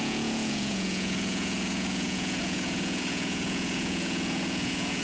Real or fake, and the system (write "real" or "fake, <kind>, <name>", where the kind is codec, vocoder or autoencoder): fake, vocoder, Vocos